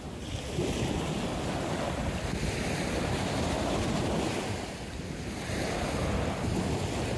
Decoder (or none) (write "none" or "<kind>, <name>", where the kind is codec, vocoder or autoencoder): none